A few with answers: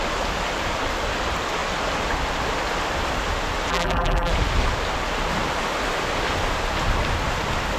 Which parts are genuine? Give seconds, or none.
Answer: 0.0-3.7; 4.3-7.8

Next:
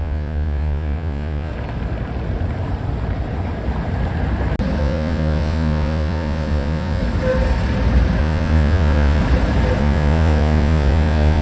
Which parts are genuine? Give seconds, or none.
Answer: 1.5-4.8; 7.0-8.2; 9.2-9.8

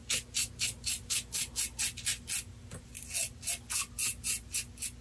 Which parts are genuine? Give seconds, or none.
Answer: 0.0-5.0

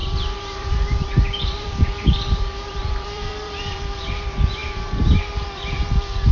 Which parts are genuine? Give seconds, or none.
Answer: 3.8-4.6; 5.8-6.3

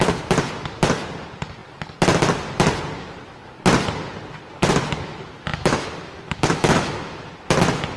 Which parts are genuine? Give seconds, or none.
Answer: 0.0-5.5; 7.3-8.0

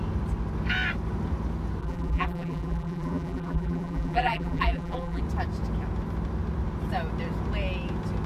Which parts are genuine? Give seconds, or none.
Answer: 0.0-1.8; 5.2-8.3